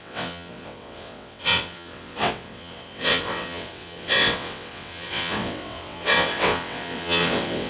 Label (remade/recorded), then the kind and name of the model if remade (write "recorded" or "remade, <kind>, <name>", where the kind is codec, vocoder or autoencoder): remade, vocoder, WaveNeXt